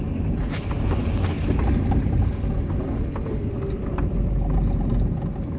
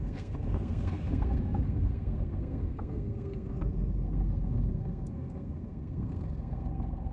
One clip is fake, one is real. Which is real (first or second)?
first